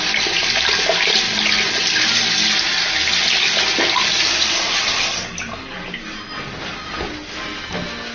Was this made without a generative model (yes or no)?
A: yes